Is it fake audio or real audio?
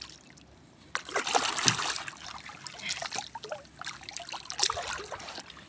real